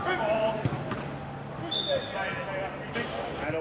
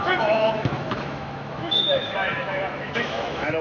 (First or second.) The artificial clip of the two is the second